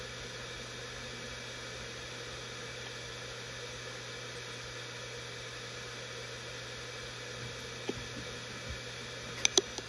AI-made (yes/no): no